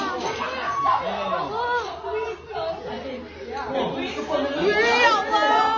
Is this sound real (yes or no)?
yes